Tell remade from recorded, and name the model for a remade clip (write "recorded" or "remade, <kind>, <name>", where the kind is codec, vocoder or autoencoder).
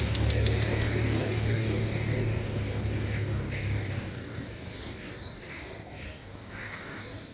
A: remade, codec, DAC